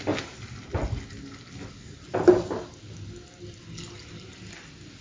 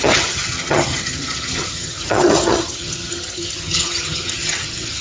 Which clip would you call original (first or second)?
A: first